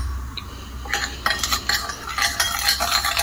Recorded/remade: recorded